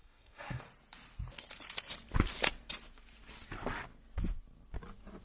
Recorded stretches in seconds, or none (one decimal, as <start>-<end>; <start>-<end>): 0.6-5.2

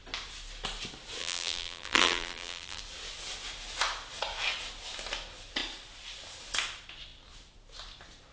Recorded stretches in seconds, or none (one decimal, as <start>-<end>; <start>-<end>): 0.0-1.2; 2.8-8.3

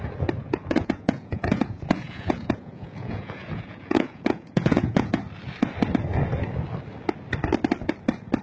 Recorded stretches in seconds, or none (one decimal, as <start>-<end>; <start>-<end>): 0.0-0.4; 5.2-8.4

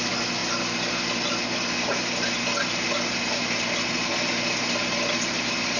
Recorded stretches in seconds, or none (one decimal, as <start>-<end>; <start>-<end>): 0.0-5.8

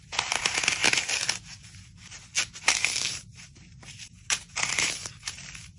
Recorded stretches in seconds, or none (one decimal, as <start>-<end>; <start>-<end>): 0.8-2.7